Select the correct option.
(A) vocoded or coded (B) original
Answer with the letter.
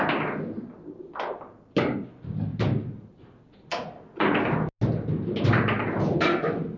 B